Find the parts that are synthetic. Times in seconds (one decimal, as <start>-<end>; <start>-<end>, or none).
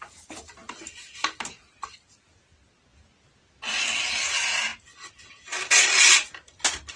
none